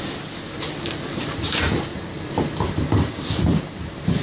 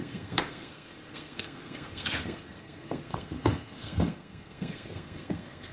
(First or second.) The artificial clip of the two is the second